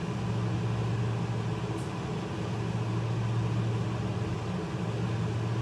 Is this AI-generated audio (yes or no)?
no